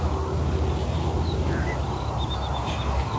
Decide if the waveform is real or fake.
real